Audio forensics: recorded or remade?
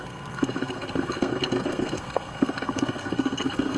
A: remade